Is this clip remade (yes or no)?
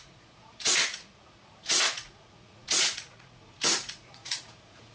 yes